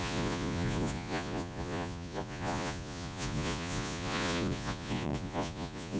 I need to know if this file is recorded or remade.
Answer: remade